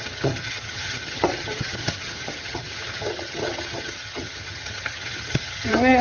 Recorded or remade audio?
remade